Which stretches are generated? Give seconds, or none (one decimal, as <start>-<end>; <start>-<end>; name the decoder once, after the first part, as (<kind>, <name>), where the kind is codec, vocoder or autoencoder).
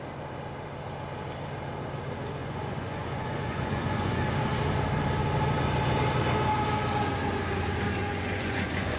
2.4-4.2 (vocoder, Vocos); 8.0-9.0